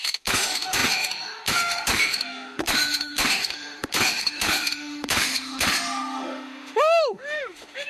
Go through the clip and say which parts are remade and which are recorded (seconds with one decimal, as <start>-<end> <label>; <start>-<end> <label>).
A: 0.0-7.9 remade